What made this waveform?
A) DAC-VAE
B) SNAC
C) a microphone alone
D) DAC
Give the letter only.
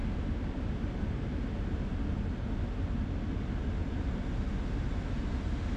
C